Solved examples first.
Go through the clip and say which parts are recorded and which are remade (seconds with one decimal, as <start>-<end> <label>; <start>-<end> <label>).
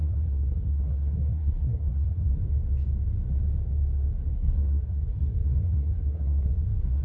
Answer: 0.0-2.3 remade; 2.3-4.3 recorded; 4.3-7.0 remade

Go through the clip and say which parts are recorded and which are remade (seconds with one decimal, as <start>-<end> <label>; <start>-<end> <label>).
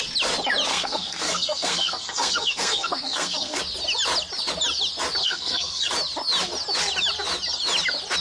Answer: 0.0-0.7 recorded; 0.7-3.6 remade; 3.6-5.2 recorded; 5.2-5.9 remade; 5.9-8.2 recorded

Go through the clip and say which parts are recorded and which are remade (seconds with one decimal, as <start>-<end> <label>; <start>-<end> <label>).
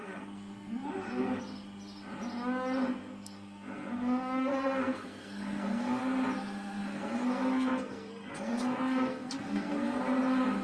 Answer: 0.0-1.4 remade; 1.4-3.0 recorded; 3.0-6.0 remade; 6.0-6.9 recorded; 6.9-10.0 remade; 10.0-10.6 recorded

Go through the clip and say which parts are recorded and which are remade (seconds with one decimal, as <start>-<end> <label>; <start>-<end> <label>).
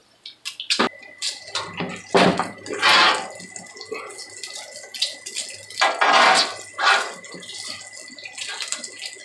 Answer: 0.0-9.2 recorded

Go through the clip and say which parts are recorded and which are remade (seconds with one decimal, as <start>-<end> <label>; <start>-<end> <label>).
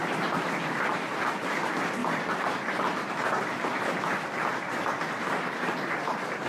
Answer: 0.0-6.5 recorded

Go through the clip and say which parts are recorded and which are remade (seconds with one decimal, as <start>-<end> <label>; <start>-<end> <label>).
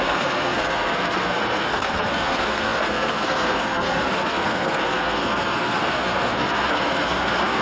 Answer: 0.0-7.6 remade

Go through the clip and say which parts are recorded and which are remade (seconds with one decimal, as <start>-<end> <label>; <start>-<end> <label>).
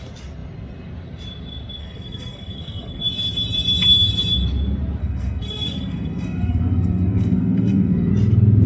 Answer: 0.0-1.8 recorded; 1.8-3.0 remade; 3.0-5.0 recorded; 5.0-8.1 remade; 8.1-8.7 recorded